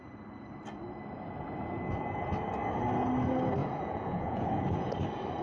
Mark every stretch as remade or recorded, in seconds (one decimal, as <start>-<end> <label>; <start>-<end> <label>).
0.0-3.6 recorded; 3.6-4.9 remade; 4.9-5.4 recorded